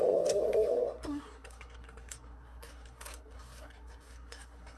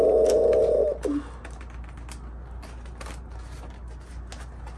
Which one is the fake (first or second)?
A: first